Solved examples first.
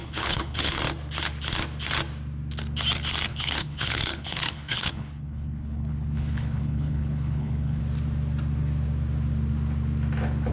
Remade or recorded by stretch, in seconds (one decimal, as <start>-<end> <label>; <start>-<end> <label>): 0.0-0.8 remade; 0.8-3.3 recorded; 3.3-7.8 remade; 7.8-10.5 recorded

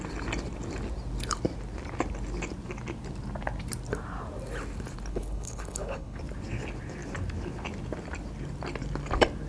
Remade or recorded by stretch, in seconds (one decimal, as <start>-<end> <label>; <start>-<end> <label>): 0.0-5.1 recorded; 5.1-6.2 remade; 6.2-9.5 recorded

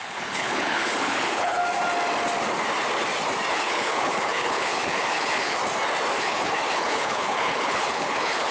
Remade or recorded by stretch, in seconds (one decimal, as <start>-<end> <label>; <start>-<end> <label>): 0.0-1.6 remade; 1.6-3.5 recorded; 3.5-5.6 remade; 5.6-6.2 recorded; 6.2-8.5 remade

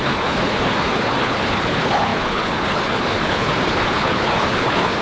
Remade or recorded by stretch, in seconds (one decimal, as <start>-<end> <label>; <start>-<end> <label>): 0.0-5.0 remade

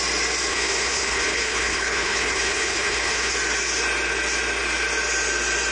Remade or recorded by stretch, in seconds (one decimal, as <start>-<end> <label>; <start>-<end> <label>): 0.0-0.5 recorded; 0.5-3.3 remade; 3.3-5.7 recorded